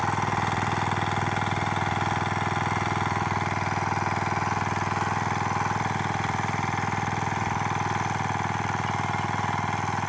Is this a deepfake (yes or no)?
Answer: no